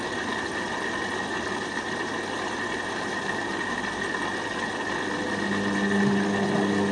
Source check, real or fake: real